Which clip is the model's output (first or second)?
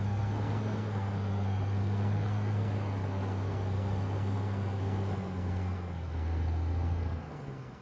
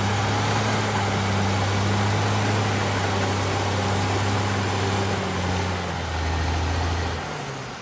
first